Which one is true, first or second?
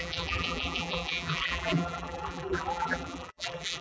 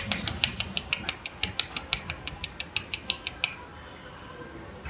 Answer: second